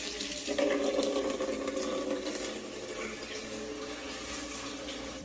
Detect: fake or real real